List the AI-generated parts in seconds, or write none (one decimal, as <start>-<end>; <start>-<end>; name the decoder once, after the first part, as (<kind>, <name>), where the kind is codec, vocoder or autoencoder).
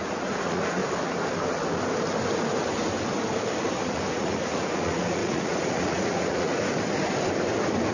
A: 0.0-0.8 (vocoder, Vocos); 3.7-6.5